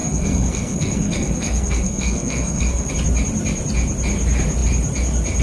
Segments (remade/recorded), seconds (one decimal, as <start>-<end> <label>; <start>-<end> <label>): 0.0-2.9 remade; 2.9-5.4 recorded